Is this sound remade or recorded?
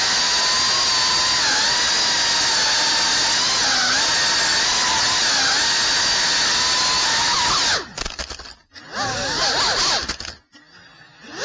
recorded